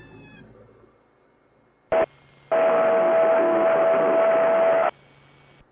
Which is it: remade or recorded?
recorded